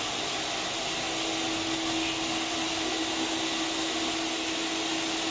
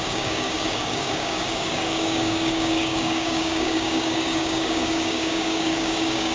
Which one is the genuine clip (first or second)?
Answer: first